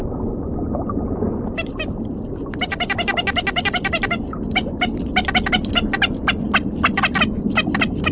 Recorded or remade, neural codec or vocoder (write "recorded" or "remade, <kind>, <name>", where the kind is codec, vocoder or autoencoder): recorded